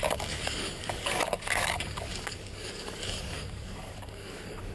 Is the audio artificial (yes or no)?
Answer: yes